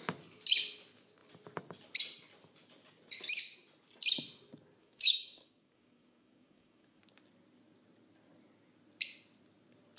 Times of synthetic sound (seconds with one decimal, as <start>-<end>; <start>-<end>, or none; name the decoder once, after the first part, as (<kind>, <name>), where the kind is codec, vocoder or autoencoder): 4.8-7.0 (codec, DAC)